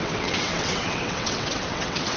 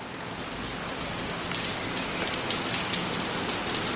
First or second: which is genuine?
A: second